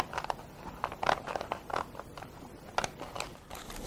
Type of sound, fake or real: real